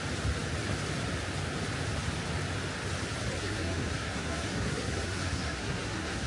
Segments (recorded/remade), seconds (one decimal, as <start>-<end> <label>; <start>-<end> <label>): 0.0-3.4 recorded; 3.4-6.3 remade